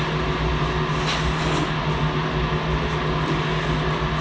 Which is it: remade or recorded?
recorded